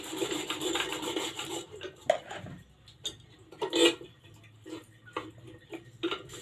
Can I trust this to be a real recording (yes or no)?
yes